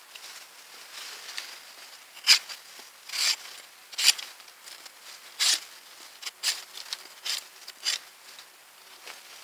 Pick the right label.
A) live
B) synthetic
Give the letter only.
B